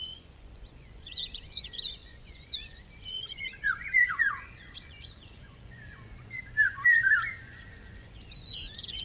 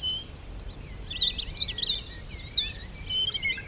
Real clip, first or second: second